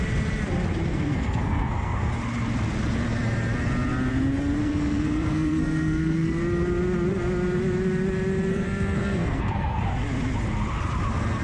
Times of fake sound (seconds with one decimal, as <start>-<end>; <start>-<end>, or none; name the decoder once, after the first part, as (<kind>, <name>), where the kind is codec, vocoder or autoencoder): 0.9-2.1 (codec, SNAC); 4.6-6.4; 8.5-9.8